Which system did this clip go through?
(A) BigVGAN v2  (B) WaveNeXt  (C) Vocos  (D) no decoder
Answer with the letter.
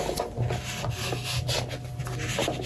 D